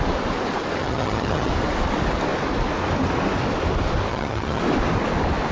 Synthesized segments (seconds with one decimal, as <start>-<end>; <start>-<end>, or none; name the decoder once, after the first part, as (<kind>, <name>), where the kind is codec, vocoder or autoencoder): 0.8-1.5 (vocoder, HiFi-GAN); 4.1-4.6